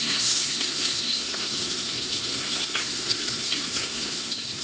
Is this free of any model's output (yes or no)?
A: no